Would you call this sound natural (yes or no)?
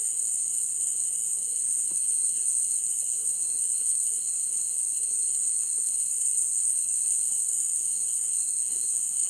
no